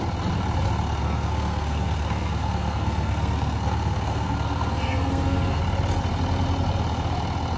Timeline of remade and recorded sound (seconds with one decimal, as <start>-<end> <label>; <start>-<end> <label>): 0.0-1.0 recorded; 1.0-5.6 remade; 5.6-7.6 recorded